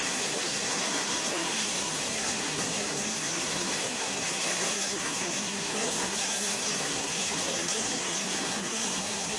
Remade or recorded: remade